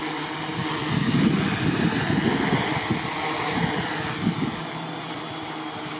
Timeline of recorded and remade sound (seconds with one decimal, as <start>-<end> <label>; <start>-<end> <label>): 0.0-6.0 recorded